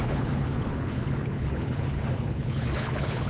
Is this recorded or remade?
remade